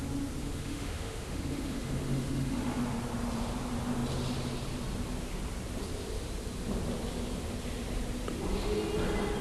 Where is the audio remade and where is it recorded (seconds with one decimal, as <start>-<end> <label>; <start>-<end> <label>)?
0.0-0.4 recorded; 0.4-2.8 remade; 2.8-9.4 recorded

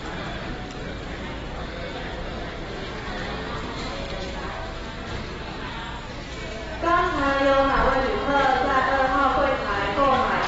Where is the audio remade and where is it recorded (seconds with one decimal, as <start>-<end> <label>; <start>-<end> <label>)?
0.0-8.6 recorded; 8.6-9.3 remade; 9.3-10.5 recorded

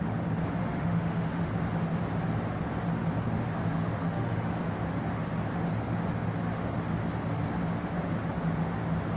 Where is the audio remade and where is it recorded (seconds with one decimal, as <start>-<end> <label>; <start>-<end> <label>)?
0.0-0.6 recorded; 0.6-1.5 remade; 1.5-3.4 recorded; 3.4-4.5 remade; 4.5-9.2 recorded

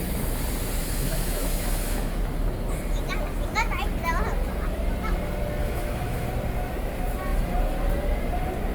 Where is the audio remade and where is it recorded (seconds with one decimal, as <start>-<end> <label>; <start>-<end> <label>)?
0.0-0.8 recorded; 0.8-2.2 remade; 2.2-5.6 recorded; 5.6-6.3 remade; 6.3-8.7 recorded

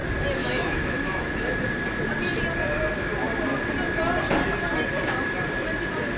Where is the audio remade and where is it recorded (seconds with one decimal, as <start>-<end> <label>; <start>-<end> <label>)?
0.0-0.4 recorded; 0.4-1.3 remade; 1.3-6.2 recorded

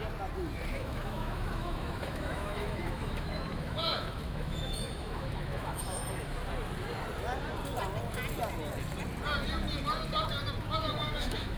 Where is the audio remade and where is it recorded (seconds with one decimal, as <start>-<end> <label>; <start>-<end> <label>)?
0.0-0.7 recorded; 0.7-6.0 remade; 6.0-10.6 recorded; 10.6-11.6 remade

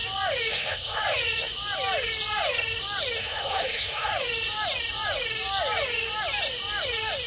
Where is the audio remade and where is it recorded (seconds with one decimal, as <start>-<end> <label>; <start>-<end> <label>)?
0.0-0.5 recorded; 0.5-1.0 remade; 1.0-3.2 recorded; 3.2-4.1 remade; 4.1-7.3 recorded